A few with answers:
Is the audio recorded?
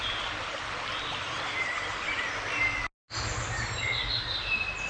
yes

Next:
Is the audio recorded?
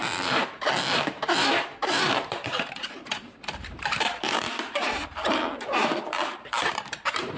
no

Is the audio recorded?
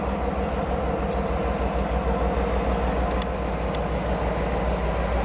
yes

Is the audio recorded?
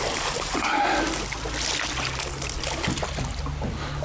yes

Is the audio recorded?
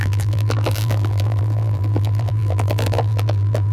no